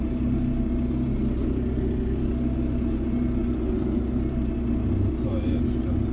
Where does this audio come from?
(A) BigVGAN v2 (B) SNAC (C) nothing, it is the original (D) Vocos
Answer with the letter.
C